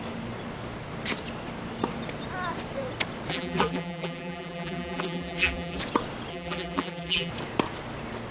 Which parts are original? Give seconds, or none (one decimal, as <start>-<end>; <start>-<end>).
0.0-3.3; 5.8-6.3; 7.3-8.3